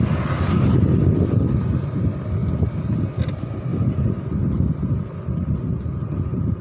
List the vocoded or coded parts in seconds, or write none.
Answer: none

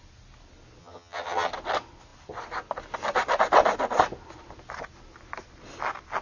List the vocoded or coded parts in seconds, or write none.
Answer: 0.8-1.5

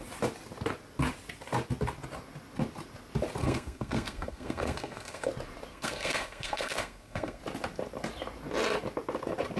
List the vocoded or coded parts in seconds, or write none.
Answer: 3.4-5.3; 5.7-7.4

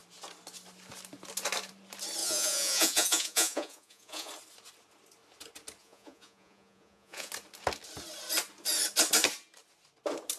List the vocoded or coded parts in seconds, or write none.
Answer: 2.2-4.3; 5.8-7.3

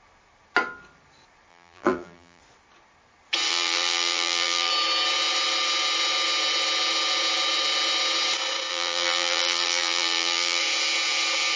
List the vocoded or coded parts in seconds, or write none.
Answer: 1.5-2.4; 3.5-4.7; 8.7-10.6

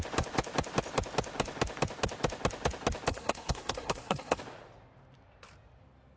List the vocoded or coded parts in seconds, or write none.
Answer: 3.1-4.4

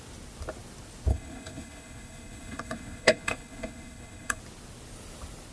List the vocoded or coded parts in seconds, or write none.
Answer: 1.1-4.4